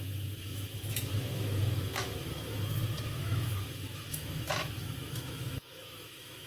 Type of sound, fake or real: fake